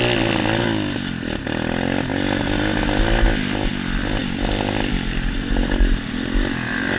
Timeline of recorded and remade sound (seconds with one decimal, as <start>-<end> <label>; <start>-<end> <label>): 0.0-7.0 recorded